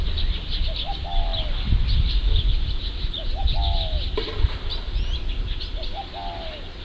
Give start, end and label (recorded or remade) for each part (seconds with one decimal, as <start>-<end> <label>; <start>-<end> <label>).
0.0-6.8 recorded